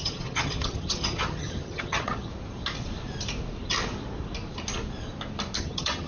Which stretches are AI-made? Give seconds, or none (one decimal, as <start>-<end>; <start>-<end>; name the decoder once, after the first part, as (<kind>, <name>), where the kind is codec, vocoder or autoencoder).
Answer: 0.0-2.3 (vocoder, HiFi-GAN); 5.6-6.1

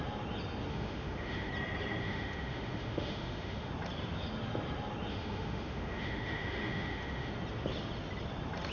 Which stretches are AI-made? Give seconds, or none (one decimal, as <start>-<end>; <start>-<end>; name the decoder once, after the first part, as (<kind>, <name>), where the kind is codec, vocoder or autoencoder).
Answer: 0.7-1.5 (autoencoder, DAC-VAE); 2.0-3.7; 5.1-7.3

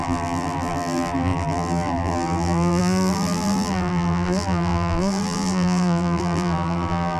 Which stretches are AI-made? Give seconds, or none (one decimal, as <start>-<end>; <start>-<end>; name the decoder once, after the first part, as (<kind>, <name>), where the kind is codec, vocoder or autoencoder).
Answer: 0.0-7.2 (vocoder, BigVGAN v2)

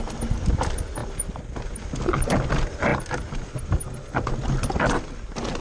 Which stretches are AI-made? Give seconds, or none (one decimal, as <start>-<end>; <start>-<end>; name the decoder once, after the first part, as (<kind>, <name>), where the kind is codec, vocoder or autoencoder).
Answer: none

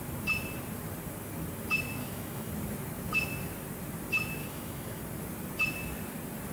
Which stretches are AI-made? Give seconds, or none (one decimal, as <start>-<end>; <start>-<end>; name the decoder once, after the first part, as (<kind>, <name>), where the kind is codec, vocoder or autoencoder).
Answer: 2.0-2.5 (autoencoder, DAC-VAE); 4.4-5.0

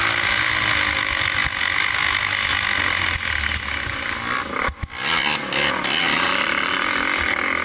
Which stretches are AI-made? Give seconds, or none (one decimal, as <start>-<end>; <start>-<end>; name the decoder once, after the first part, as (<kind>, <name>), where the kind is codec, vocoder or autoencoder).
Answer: none

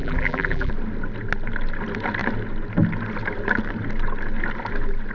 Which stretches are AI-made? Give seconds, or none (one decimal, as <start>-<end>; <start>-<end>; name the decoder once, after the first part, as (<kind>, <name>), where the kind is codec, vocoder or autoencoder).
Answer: 0.0-0.7 (vocoder, BigVGAN v2)

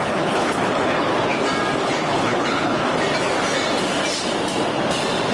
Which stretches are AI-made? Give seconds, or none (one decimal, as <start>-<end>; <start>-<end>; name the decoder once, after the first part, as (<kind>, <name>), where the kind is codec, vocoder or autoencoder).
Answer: 0.0-1.1 (codec, HILCodec); 1.8-2.8